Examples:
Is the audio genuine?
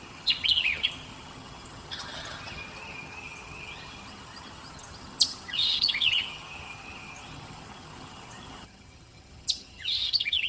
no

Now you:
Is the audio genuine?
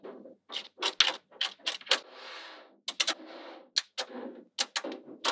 yes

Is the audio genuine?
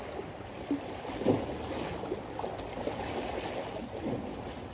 yes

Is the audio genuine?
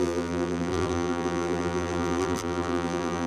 no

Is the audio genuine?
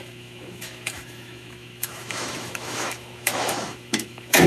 no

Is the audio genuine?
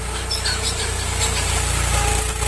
yes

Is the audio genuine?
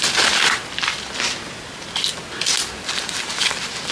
yes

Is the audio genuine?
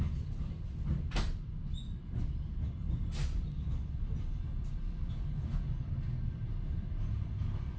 yes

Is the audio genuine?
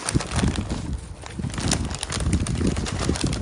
yes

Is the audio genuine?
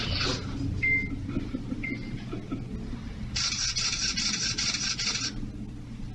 yes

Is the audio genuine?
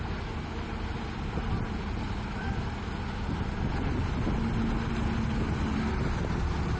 yes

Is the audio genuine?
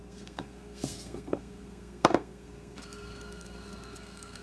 no